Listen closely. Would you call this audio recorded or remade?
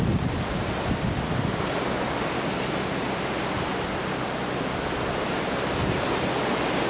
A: recorded